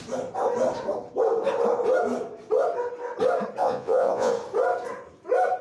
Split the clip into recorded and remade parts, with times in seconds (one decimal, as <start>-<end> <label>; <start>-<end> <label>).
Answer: 0.0-3.6 recorded; 3.6-4.3 remade; 4.3-5.6 recorded